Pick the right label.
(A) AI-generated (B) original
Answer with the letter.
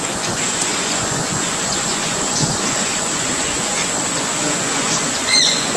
A